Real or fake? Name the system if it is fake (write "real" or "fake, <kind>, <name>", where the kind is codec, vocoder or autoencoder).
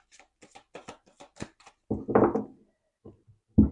real